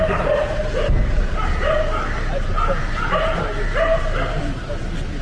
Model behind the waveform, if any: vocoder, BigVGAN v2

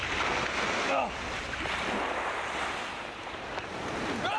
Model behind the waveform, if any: none